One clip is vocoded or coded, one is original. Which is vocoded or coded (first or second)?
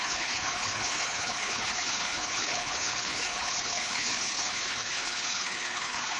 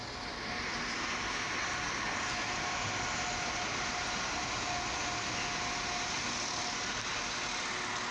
first